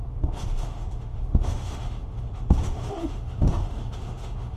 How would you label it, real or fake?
fake